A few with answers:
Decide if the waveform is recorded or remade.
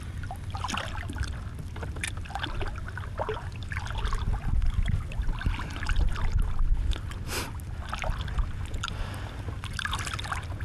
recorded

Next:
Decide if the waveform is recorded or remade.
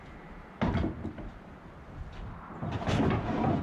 recorded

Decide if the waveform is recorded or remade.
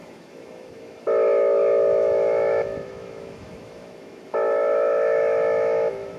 remade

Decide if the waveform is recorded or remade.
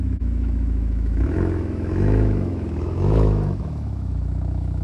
remade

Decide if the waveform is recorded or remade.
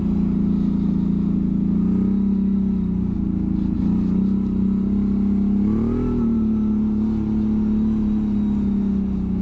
recorded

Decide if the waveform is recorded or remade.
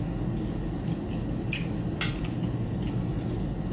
recorded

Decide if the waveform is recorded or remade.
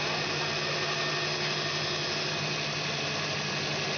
recorded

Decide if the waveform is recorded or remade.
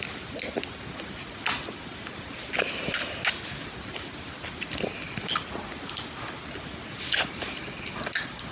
recorded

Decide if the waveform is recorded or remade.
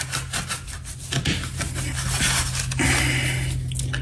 recorded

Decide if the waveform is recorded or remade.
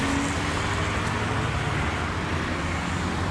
recorded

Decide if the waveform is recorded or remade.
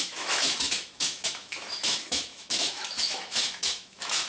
remade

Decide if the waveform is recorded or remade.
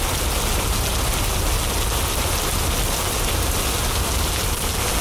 recorded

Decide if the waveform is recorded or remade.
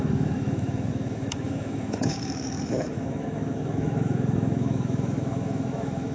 remade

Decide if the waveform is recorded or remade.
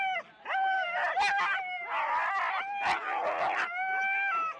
recorded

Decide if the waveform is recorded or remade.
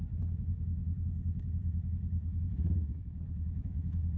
remade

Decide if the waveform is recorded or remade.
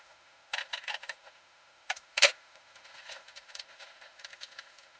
remade